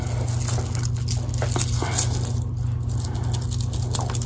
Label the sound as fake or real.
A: real